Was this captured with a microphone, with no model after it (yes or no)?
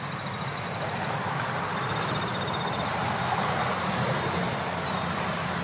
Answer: yes